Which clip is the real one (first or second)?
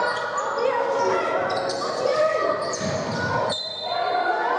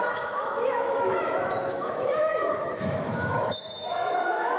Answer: first